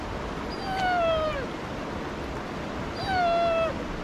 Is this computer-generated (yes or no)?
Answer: no